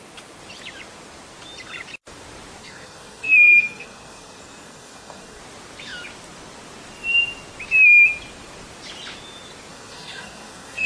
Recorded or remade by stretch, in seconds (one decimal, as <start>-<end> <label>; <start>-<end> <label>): 0.0-2.6 recorded; 2.6-5.4 remade; 5.4-9.7 recorded; 9.7-10.9 remade